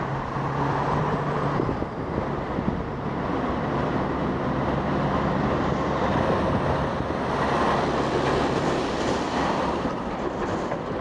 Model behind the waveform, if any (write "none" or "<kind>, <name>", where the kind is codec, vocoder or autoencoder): vocoder, BigVGAN v2